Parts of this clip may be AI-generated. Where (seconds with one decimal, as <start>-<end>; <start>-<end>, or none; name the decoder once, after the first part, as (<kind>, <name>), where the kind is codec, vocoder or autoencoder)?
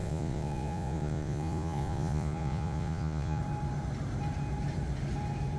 0.0-3.4 (vocoder, Vocos)